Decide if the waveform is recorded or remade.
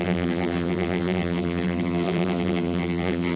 remade